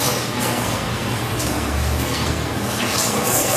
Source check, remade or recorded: remade